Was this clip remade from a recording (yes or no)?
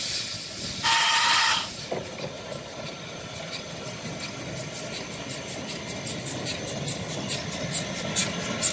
no